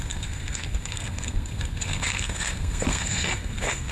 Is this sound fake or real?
fake